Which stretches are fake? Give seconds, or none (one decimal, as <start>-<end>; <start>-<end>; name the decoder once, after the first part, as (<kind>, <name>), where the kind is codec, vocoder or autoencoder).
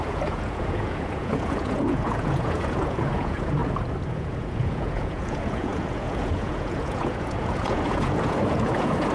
0.0-3.6 (vocoder, Vocos); 4.1-9.1